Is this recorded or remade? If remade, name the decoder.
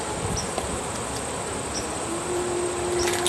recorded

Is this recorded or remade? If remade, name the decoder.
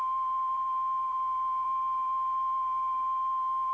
remade, vocoder, BigVGAN v2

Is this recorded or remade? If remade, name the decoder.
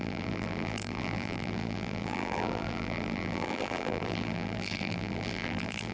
remade, vocoder, BigVGAN v2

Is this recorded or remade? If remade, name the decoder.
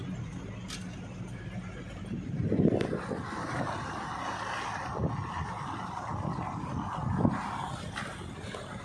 recorded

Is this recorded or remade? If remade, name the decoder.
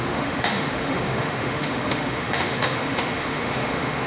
remade, autoencoder, DAC-VAE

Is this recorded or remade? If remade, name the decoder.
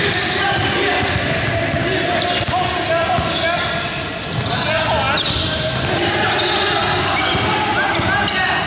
recorded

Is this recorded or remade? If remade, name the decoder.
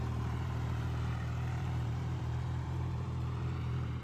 remade, vocoder, BigVGAN v2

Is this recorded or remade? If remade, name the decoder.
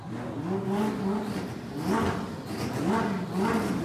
recorded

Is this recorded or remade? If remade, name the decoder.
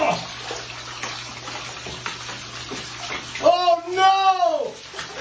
recorded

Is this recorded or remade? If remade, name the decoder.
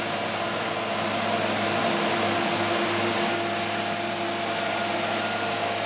recorded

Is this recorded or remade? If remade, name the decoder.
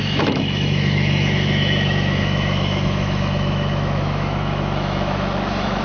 remade, autoencoder, DAC-VAE